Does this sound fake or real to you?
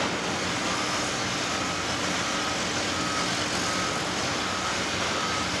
real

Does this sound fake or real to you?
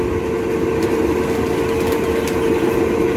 real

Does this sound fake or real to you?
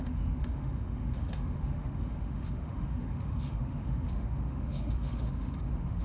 fake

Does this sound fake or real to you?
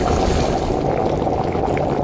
real